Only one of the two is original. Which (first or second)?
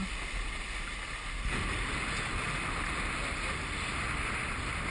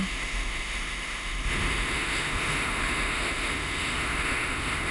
first